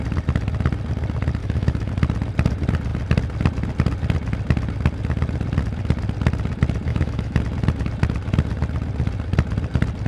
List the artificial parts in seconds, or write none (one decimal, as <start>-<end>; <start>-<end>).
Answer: 1.4-1.9; 6.9-7.4